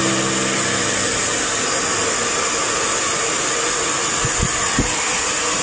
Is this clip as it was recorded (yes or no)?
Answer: yes